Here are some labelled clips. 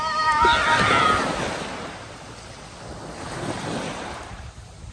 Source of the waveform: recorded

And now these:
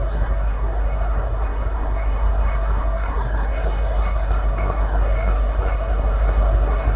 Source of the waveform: remade